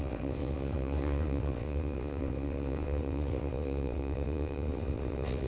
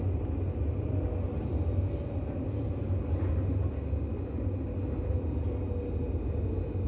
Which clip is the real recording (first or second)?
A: second